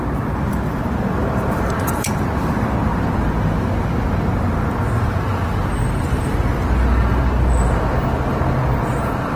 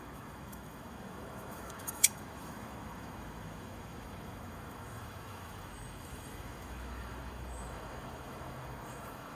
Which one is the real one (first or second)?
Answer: first